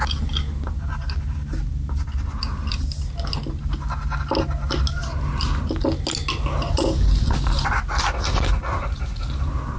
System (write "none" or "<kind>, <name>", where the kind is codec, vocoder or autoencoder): none